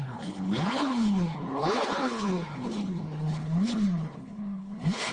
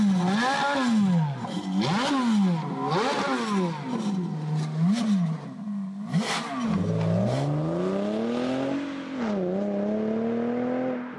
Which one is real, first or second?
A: second